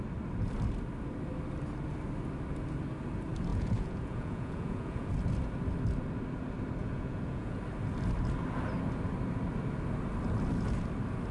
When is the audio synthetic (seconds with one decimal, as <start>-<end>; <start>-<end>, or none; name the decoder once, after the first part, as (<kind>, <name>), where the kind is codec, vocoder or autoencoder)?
3.5-5.1 (vocoder, Vocos); 6.8-7.6